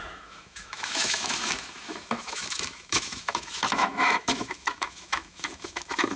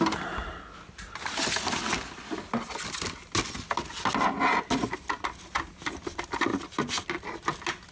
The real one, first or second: second